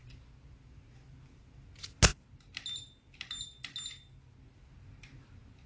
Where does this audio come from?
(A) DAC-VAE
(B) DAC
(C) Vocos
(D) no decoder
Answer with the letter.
D